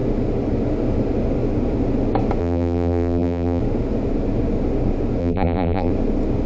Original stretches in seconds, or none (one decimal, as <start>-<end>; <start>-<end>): 0.0-2.4; 3.6-5.2; 5.9-6.5